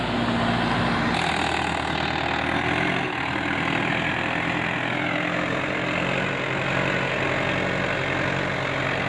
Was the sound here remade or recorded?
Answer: recorded